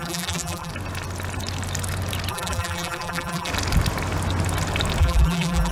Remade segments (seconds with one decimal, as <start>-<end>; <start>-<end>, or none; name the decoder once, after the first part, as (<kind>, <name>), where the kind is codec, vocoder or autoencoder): 0.0-0.7 (vocoder, BigVGAN v2); 2.3-3.5; 5.0-5.7